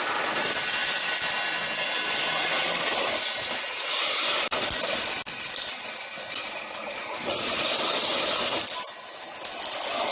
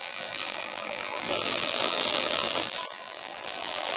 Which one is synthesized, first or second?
second